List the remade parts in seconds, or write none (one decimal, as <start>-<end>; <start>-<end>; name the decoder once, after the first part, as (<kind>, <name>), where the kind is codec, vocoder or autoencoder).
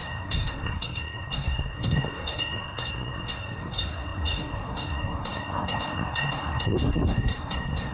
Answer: 0.0-7.9 (codec, SNAC)